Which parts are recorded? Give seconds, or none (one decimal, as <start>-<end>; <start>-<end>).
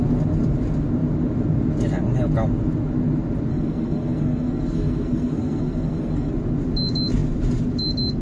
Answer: 0.0-3.5; 6.3-8.2